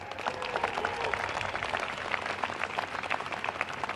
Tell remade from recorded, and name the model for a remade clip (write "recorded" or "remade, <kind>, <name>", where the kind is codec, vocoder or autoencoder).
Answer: recorded